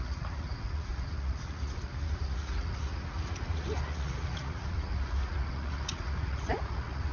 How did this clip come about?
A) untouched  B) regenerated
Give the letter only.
B